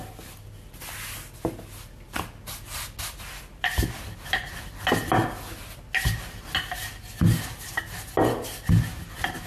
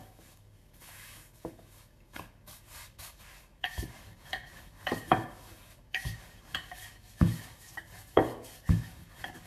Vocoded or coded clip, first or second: second